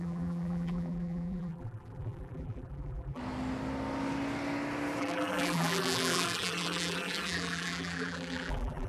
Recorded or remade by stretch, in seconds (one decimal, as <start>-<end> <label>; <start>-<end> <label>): 0.0-3.2 remade; 3.2-5.0 recorded; 5.0-8.9 remade